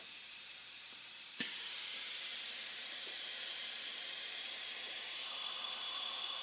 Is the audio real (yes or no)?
no